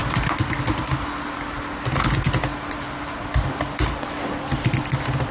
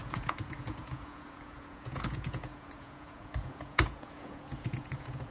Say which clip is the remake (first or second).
second